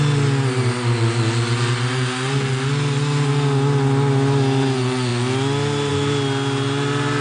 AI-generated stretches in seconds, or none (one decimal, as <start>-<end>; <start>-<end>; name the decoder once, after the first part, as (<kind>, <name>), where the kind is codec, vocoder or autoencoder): none

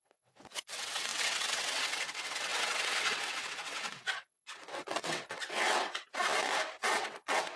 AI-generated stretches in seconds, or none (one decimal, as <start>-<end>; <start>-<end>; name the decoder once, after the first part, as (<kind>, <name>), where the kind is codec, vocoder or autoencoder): 0.0-6.1 (vocoder, WaveNeXt); 6.9-7.6

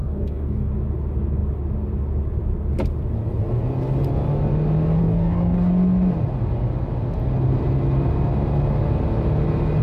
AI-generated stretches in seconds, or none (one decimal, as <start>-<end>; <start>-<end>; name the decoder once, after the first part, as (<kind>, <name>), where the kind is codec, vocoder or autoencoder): 0.0-0.7 (codec, DAC); 5.0-5.7